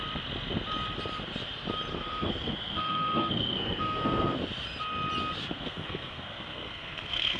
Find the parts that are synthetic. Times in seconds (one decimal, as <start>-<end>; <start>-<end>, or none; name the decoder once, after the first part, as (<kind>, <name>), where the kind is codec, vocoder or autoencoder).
1.9-4.4 (codec, SNAC); 5.4-7.4